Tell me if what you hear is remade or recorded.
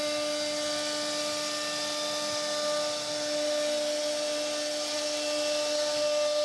recorded